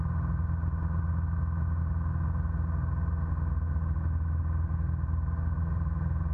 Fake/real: real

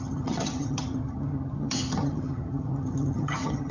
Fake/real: fake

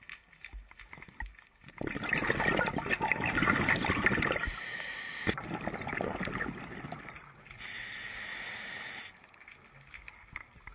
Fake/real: real